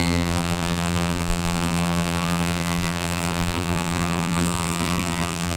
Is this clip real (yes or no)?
no